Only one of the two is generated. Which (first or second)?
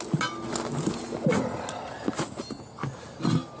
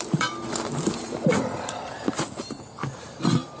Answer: second